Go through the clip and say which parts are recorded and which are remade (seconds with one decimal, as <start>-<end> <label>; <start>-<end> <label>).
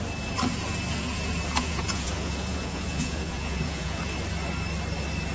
0.0-1.6 recorded; 1.6-4.0 remade; 4.0-5.3 recorded